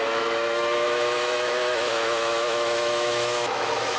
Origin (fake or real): fake